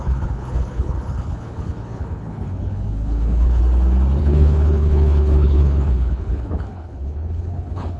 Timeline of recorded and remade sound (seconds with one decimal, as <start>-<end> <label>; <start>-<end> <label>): 0.0-3.6 remade; 3.6-4.2 recorded; 4.2-8.0 remade

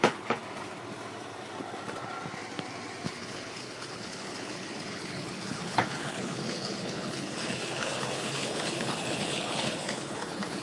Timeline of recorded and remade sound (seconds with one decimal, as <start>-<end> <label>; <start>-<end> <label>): 0.0-0.4 remade; 0.4-3.1 recorded; 3.1-10.6 remade

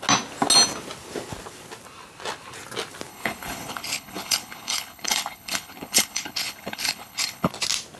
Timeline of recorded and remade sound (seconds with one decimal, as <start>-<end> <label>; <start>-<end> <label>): 0.0-3.1 recorded; 3.1-7.5 remade; 7.5-8.0 recorded

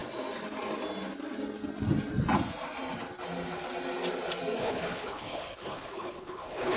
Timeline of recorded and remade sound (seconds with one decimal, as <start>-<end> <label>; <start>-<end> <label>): 0.0-4.6 recorded; 4.6-6.8 remade

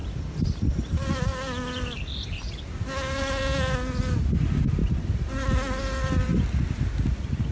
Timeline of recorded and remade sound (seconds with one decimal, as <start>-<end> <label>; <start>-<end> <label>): 0.0-7.5 recorded